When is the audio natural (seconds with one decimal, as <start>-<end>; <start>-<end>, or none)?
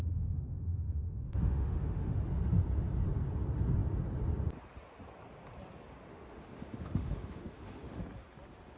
2.2-6.1; 8.0-8.8